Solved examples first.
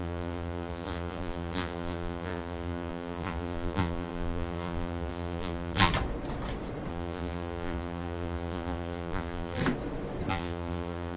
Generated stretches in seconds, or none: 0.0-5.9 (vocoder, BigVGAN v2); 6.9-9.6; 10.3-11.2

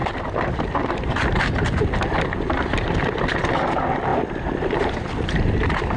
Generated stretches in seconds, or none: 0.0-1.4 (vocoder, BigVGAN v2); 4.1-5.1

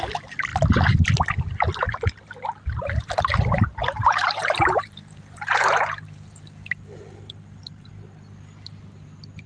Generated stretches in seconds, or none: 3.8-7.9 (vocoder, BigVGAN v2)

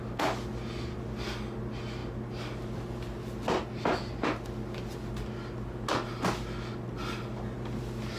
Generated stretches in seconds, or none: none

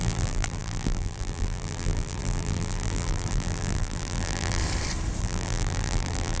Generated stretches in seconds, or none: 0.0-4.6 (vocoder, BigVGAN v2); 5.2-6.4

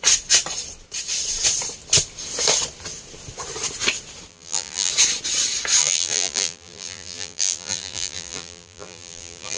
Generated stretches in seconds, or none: 4.3-4.9 (vocoder, BigVGAN v2); 5.8-9.6